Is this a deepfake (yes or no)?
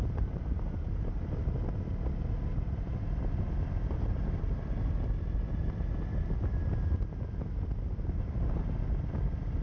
no